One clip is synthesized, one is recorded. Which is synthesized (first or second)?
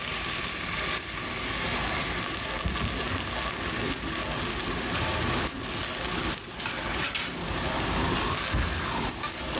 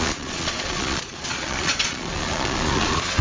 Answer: second